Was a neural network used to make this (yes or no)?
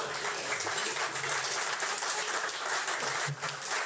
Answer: no